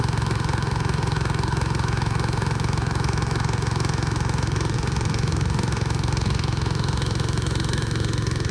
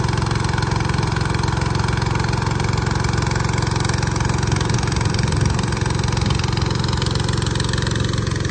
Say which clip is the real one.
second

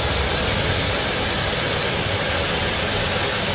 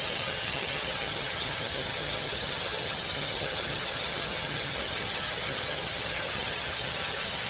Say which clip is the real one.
first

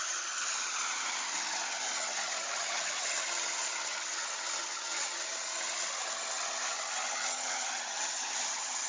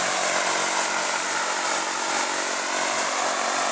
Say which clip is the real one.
second